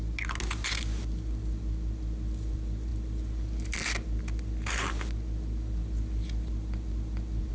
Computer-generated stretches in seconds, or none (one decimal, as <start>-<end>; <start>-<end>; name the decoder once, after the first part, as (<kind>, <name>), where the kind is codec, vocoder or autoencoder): none